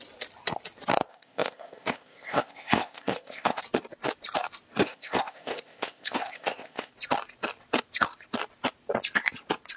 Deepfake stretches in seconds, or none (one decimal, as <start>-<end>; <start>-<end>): 1.1-3.6; 4.8-6.9